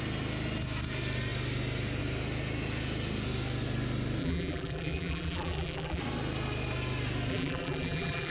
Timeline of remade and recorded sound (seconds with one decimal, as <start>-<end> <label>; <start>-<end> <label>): 0.0-4.2 recorded; 4.2-6.0 remade; 6.0-7.3 recorded; 7.3-8.3 remade